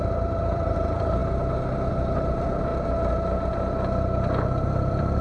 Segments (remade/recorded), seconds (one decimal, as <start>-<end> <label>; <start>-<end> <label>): 0.0-1.2 remade; 1.2-1.9 recorded; 1.9-2.7 remade; 2.7-4.0 recorded; 4.0-5.2 remade